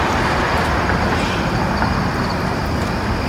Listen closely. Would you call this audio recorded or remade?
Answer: recorded